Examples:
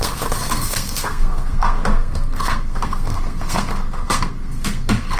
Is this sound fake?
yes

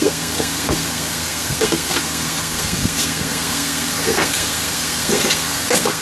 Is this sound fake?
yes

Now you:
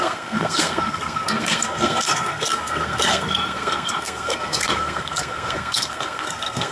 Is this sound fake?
yes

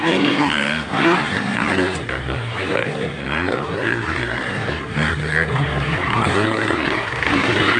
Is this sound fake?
yes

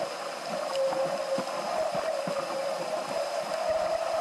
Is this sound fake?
no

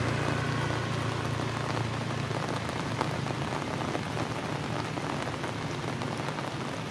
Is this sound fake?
no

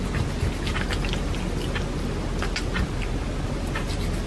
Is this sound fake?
no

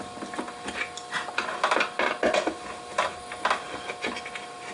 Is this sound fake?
no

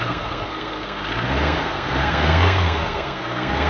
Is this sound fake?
yes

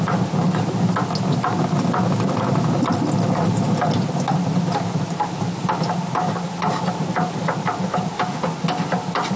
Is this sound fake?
no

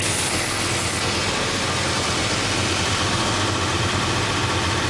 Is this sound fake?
no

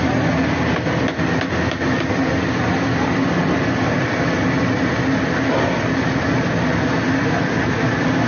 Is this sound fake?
no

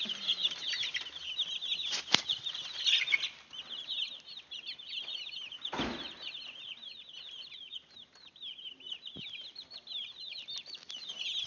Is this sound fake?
no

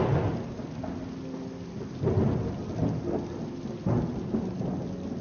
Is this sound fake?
no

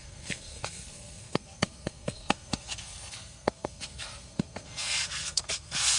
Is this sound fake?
yes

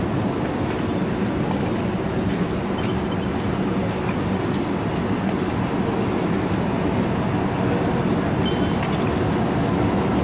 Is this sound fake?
no